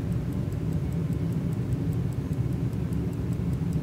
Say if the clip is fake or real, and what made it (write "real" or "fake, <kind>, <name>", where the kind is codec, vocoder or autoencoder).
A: real